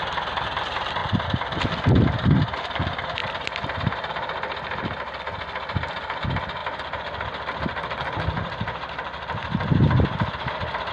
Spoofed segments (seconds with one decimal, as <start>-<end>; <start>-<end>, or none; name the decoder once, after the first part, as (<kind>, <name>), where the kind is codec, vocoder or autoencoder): 1.0-1.6 (vocoder, BigVGAN v2); 3.2-5.2; 6.6-10.9